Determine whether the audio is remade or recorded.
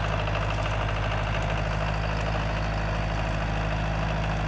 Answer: recorded